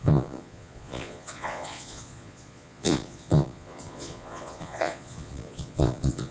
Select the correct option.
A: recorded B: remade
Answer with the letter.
B